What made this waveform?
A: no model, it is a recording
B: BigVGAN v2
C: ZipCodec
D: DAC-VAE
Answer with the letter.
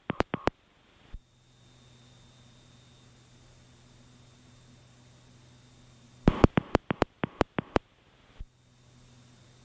A